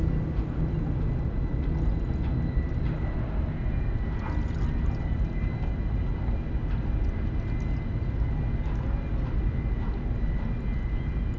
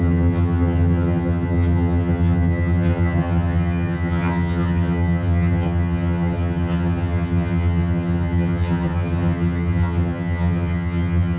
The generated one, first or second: second